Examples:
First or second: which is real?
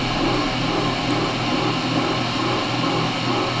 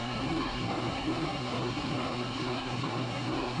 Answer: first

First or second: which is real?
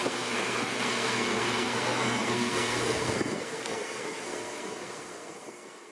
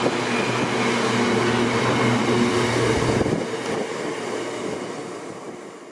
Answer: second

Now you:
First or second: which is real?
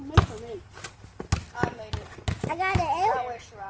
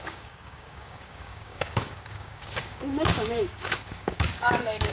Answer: first